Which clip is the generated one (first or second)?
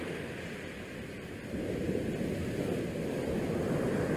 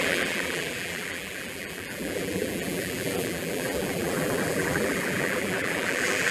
second